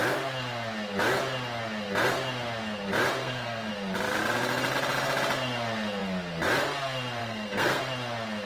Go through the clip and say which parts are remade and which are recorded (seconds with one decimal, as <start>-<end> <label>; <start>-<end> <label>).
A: 0.0-3.2 recorded; 3.2-3.7 remade; 3.7-7.2 recorded; 7.2-7.8 remade; 7.8-8.5 recorded